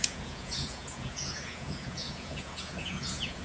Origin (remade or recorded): remade